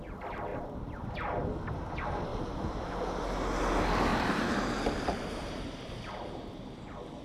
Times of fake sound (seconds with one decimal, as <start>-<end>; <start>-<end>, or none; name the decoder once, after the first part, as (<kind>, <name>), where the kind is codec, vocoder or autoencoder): 0.5-1.1 (vocoder, BigVGAN v2); 2.3-3.0; 4.1-6.0